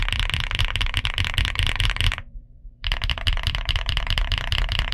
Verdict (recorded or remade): remade